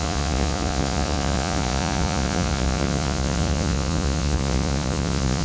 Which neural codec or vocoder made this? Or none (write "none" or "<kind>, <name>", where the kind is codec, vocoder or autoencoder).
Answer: vocoder, Vocos